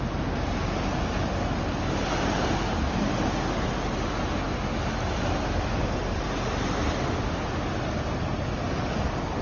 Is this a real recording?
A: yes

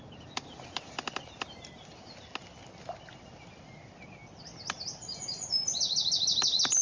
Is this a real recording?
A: yes